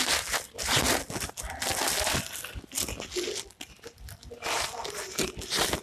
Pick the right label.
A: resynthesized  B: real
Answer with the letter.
B